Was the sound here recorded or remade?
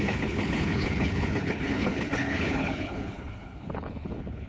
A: remade